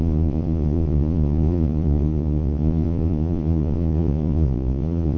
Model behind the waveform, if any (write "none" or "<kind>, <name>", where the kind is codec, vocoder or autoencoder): vocoder, Vocos